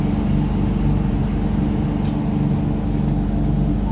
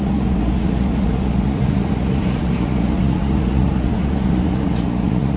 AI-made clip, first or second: second